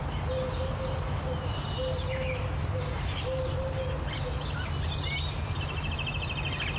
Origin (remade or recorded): recorded